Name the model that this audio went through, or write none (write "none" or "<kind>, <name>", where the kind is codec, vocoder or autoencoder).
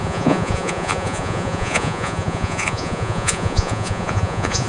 vocoder, Vocos